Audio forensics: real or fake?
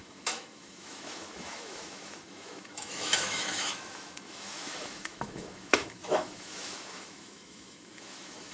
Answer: fake